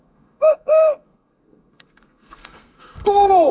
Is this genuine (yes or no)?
no